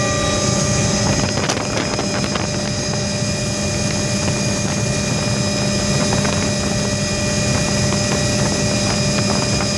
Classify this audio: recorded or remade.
recorded